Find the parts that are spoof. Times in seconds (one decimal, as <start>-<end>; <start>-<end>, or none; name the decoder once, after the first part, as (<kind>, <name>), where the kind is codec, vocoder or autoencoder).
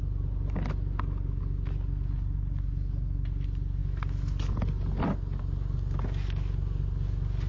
none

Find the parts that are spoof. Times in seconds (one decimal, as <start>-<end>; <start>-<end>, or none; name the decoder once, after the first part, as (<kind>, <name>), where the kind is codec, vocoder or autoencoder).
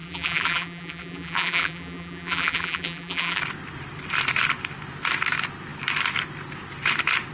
0.0-3.4 (vocoder, BigVGAN v2)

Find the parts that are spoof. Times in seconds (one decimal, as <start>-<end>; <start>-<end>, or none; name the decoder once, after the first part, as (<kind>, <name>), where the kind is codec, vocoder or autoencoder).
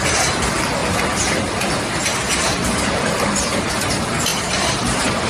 2.1-3.3 (vocoder, BigVGAN v2); 4.3-5.3